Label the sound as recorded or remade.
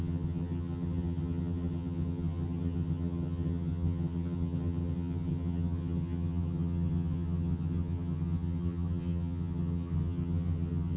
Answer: remade